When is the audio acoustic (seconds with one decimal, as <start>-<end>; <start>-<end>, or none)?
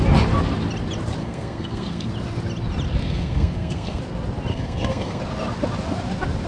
0.0-1.2; 2.1-3.0; 4.0-4.5; 5.2-6.5